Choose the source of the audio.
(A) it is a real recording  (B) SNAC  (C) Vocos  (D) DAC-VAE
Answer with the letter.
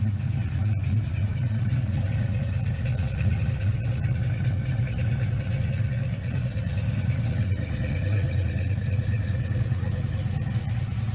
C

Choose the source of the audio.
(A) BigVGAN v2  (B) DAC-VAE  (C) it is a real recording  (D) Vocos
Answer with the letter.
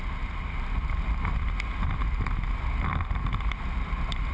C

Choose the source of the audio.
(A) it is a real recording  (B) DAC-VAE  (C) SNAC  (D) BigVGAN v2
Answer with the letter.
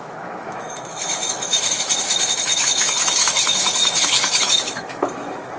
B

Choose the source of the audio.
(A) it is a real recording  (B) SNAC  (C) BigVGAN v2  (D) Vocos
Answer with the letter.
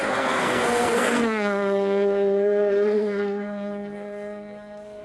B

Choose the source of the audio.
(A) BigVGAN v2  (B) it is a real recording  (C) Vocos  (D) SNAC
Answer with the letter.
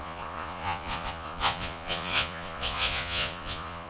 C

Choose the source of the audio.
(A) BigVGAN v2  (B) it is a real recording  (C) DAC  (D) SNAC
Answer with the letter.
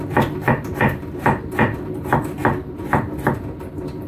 A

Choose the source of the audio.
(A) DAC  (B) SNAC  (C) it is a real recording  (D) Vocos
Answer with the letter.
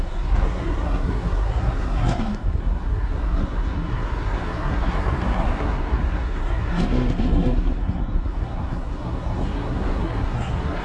B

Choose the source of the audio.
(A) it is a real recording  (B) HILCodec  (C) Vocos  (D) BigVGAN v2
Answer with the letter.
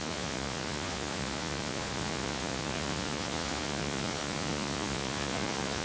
C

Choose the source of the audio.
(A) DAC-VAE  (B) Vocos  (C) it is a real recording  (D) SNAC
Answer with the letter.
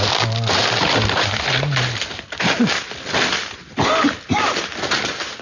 C